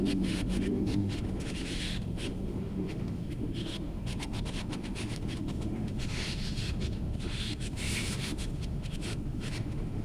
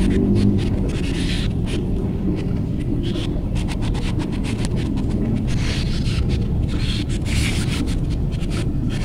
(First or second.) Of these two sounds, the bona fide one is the second